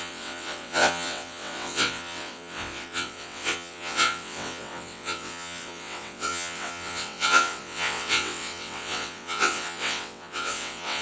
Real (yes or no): no